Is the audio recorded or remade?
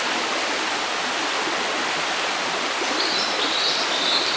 recorded